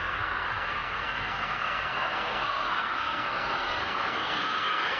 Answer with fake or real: fake